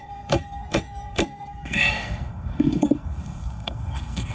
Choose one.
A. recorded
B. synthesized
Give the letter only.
B